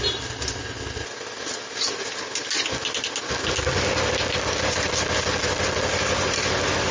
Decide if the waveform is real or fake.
real